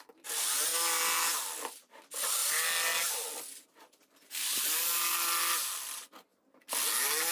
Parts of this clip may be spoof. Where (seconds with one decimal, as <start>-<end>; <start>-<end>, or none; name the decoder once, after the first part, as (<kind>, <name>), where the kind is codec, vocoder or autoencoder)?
none